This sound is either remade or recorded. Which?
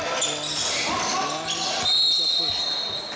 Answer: recorded